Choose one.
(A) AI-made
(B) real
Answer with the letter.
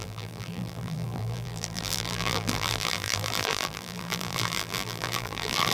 A